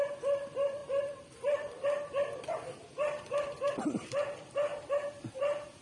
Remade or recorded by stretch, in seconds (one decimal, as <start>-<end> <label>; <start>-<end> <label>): 0.0-4.7 remade; 4.7-5.2 recorded; 5.2-5.8 remade